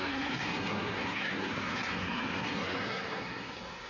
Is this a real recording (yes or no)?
no